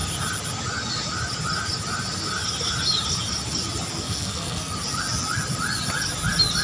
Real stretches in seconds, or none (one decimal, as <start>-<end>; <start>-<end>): 0.0-3.9; 4.7-6.6